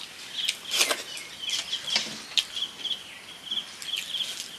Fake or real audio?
real